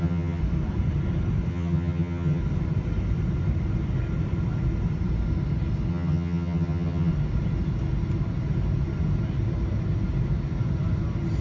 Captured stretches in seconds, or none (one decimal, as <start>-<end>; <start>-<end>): 0.4-1.5; 2.4-5.9; 7.1-11.4